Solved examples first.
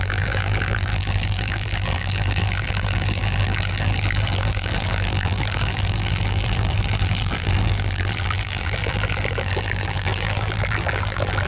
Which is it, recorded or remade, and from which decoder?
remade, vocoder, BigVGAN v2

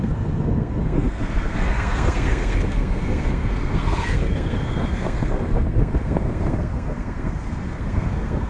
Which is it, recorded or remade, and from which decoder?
remade, codec, SNAC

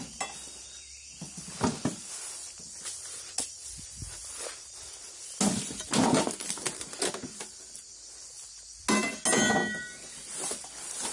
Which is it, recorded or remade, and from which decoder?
recorded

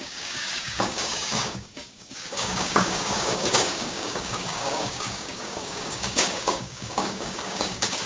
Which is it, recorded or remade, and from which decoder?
remade, codec, DAC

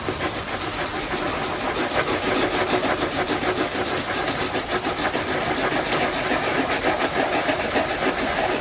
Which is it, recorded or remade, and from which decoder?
recorded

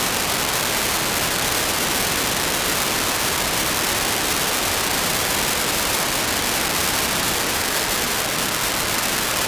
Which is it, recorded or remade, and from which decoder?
remade, vocoder, BigVGAN v2